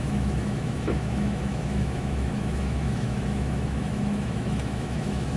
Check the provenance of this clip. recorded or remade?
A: remade